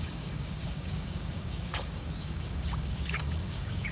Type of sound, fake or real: fake